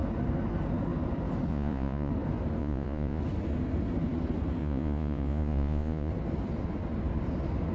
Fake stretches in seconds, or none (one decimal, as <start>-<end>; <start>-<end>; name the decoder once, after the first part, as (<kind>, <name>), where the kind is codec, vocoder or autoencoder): 1.5-2.1 (vocoder, Vocos); 2.6-3.2; 4.6-6.1